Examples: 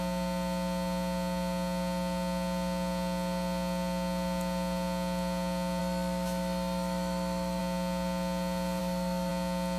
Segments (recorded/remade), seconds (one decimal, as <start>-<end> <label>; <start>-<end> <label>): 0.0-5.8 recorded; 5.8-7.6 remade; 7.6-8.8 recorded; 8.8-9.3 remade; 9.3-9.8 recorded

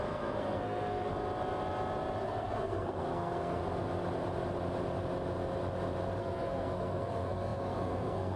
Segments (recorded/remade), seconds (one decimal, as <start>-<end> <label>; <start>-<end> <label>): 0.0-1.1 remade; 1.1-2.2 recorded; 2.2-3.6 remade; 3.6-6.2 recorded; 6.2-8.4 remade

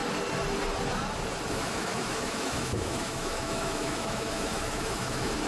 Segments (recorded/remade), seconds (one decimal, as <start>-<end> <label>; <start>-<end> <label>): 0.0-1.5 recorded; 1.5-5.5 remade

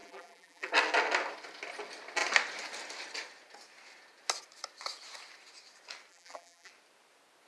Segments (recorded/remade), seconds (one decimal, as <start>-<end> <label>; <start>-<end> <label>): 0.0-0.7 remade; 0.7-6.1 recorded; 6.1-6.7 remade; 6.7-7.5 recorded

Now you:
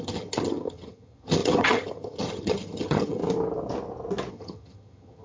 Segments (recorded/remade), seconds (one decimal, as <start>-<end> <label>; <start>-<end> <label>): 0.0-3.2 remade; 3.2-4.3 recorded; 4.3-5.2 remade

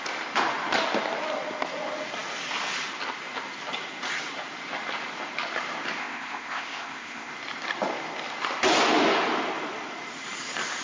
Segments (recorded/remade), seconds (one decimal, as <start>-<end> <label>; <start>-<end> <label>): 0.0-6.0 recorded; 6.0-7.3 remade; 7.3-10.8 recorded